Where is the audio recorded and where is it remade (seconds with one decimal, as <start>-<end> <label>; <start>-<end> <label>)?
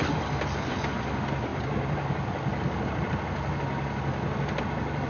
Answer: 0.0-5.1 recorded